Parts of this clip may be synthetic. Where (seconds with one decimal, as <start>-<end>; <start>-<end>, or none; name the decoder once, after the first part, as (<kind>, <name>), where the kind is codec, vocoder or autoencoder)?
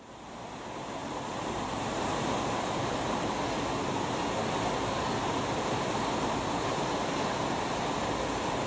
1.0-3.0 (vocoder, BigVGAN v2)